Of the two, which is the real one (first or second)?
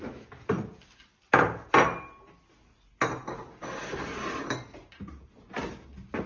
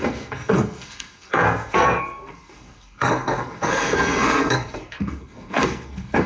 first